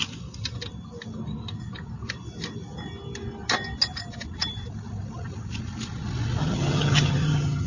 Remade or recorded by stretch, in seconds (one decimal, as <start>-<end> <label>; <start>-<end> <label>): 0.0-6.4 recorded; 6.4-7.7 remade